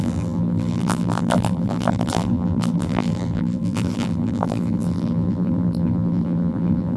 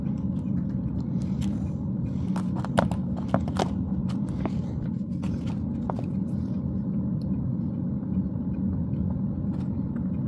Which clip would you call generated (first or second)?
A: first